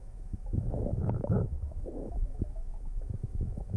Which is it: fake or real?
fake